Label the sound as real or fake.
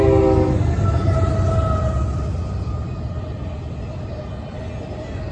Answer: real